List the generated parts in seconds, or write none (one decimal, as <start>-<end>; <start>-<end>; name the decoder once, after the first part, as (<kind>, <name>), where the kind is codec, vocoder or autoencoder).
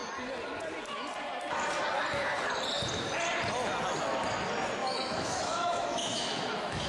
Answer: 4.8-6.9 (autoencoder, DAC-VAE)